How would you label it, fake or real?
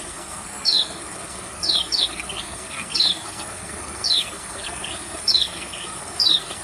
fake